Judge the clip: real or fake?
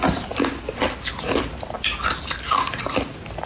real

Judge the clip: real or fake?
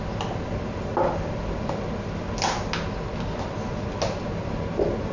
real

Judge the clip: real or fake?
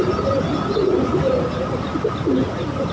real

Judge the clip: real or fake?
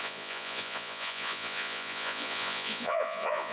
fake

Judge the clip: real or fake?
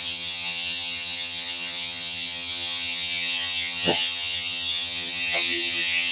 fake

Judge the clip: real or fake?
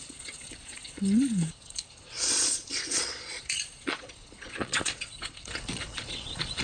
fake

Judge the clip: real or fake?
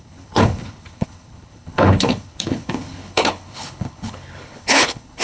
fake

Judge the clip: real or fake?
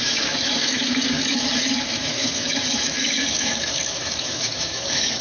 fake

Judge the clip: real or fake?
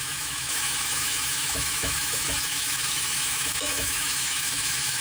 fake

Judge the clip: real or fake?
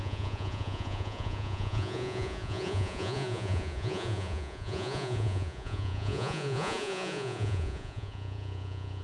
fake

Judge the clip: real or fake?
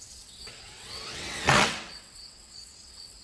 fake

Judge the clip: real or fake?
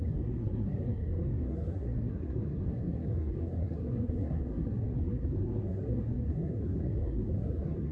fake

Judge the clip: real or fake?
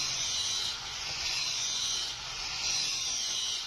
fake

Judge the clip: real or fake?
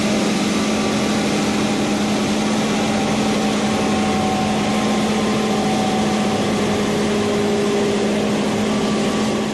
real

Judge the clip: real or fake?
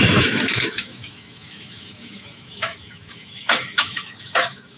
fake